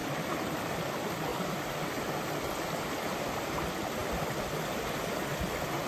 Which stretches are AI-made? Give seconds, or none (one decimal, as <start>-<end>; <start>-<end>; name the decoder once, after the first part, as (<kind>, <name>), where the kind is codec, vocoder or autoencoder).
0.0-0.5 (vocoder, BigVGAN v2); 4.0-5.4